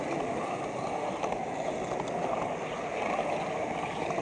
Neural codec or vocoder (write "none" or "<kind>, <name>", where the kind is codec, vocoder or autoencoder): none